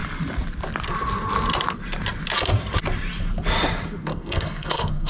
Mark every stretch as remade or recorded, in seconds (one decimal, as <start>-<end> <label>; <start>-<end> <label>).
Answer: 0.0-4.1 recorded; 4.1-5.1 remade